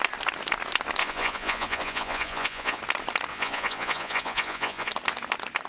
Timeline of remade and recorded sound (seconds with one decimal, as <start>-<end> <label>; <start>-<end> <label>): 0.0-1.0 recorded; 1.0-2.8 remade; 2.8-3.3 recorded; 3.3-4.9 remade; 4.9-5.7 recorded